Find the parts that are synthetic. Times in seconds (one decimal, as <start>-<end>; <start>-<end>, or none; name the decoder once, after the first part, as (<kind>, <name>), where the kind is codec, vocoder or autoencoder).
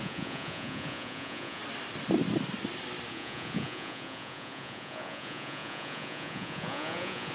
0.0-1.6 (vocoder, Vocos); 3.1-7.3